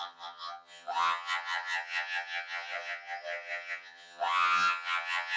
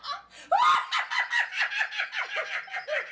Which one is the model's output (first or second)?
first